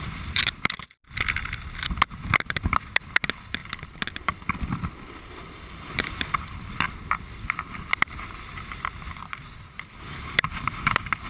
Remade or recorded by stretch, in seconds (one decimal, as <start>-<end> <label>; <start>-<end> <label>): 0.0-11.3 recorded